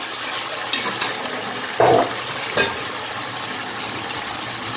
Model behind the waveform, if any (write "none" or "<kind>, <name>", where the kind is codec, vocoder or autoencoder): none